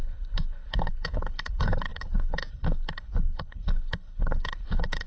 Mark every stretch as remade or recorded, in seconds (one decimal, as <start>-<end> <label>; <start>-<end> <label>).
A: 0.0-5.1 remade